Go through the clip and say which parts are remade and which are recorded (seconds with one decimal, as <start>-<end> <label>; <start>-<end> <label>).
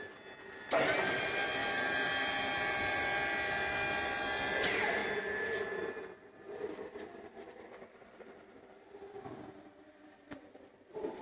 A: 0.0-1.6 recorded; 1.6-3.1 remade; 3.1-11.2 recorded